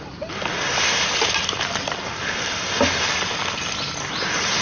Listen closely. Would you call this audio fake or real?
fake